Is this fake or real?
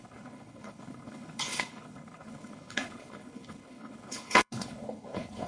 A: fake